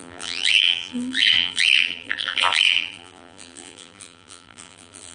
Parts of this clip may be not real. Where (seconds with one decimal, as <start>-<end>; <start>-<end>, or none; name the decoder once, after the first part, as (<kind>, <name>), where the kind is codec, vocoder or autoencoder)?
0.0-5.1 (vocoder, BigVGAN v2)